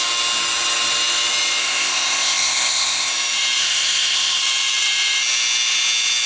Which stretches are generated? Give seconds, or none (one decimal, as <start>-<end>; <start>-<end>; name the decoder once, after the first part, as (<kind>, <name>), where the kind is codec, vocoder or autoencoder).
1.6-3.1 (codec, ZipCodec); 3.6-4.4